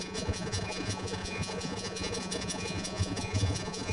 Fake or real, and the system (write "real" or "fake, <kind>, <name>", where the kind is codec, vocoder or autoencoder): fake, vocoder, Vocos